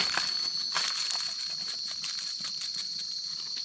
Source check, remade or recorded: recorded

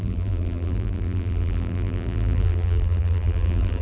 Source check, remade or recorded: remade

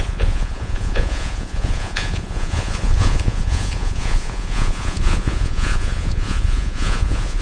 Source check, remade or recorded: remade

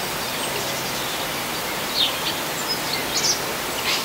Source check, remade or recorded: recorded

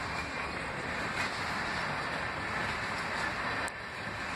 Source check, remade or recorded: recorded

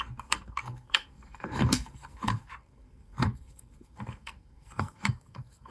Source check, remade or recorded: remade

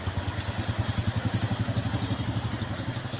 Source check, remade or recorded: recorded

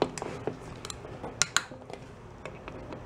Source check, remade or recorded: recorded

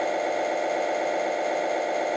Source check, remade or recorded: recorded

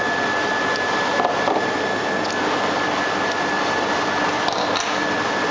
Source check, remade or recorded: recorded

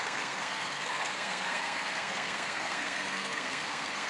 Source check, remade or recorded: remade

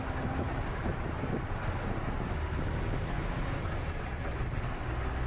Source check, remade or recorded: recorded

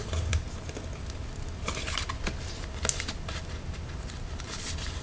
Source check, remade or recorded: recorded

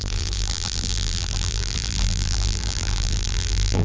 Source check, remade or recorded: remade